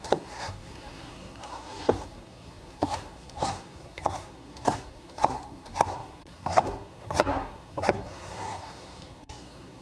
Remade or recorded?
remade